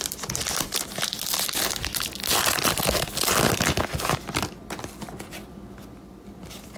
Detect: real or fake real